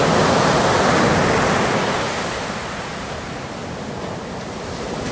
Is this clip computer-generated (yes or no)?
no